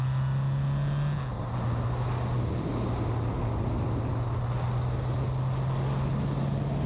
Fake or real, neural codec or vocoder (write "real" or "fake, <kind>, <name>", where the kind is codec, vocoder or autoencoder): real